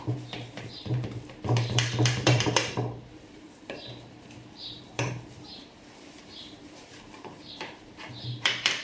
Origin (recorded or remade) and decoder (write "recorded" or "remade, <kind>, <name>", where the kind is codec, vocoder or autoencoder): remade, vocoder, BigVGAN v2